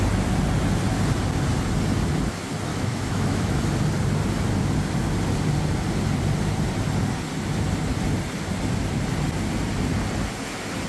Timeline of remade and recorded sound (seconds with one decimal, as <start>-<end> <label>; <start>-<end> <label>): 0.0-2.7 recorded; 2.7-3.6 remade; 3.6-10.9 recorded